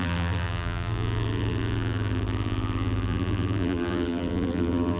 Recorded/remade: remade